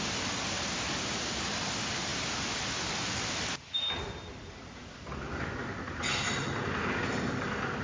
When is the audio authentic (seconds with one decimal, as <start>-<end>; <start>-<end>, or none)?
0.0-7.8